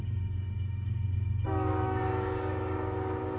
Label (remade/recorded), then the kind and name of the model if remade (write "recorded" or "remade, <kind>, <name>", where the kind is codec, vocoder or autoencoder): remade, codec, DAC